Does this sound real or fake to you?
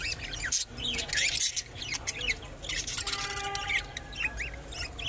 real